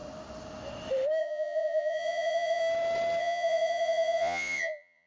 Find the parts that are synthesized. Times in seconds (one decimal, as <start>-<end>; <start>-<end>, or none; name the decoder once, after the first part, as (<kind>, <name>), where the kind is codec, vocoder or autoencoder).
1.2-2.6 (vocoder, Vocos); 3.2-5.1